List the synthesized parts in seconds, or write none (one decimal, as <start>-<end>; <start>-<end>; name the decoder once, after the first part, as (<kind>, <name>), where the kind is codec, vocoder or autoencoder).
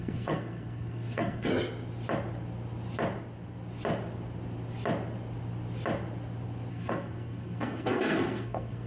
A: 0.0-1.5 (codec, SNAC); 6.7-8.9